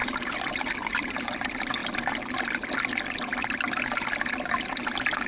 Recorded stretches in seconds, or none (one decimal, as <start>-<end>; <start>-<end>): 1.2-5.3